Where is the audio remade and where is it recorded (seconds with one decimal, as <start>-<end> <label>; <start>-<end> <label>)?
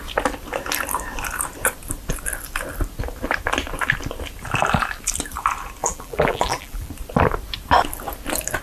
0.0-5.8 recorded; 5.8-6.9 remade; 6.9-8.6 recorded